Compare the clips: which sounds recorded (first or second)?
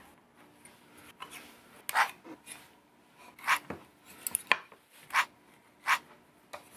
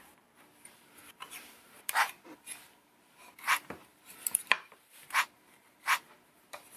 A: first